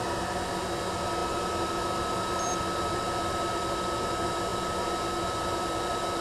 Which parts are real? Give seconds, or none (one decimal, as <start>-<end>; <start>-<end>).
0.0-6.2